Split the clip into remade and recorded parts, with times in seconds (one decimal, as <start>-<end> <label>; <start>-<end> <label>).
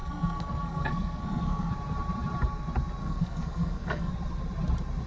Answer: 0.0-1.7 remade; 1.7-3.0 recorded; 3.0-4.1 remade; 4.1-5.1 recorded